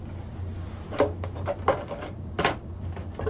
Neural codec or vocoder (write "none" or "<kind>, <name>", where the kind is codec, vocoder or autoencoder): none